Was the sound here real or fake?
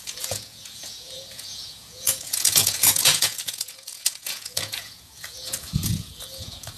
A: fake